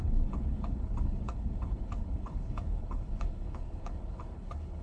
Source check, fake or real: fake